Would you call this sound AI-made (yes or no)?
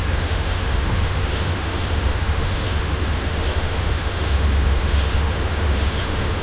yes